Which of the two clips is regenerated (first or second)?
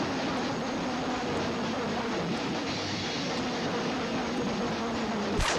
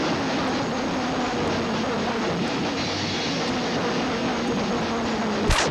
first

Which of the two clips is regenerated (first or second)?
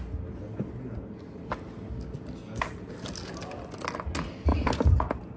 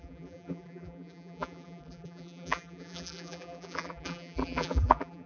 second